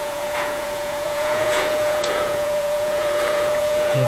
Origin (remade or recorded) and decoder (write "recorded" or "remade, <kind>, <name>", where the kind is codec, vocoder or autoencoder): remade, vocoder, Vocos